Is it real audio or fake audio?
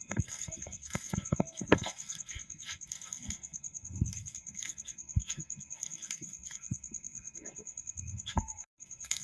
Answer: fake